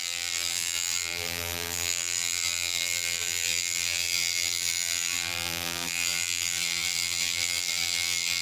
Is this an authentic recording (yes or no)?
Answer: no